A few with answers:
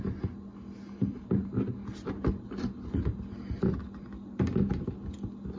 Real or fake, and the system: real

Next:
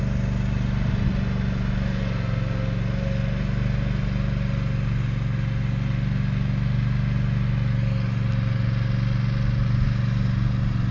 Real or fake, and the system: real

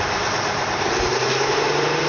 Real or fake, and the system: real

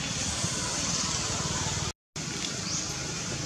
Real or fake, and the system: real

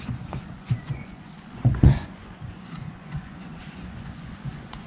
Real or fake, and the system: fake, vocoder, Vocos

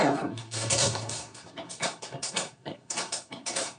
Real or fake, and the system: fake, codec, SNAC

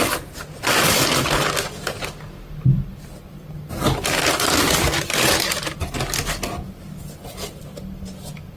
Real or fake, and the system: real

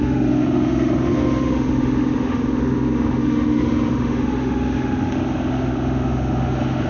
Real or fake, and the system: fake, autoencoder, DAC-VAE